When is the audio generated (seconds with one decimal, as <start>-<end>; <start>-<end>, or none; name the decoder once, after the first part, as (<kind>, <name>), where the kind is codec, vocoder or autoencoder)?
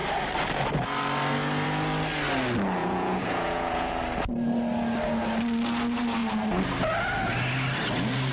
2.8-4.0 (vocoder, Vocos)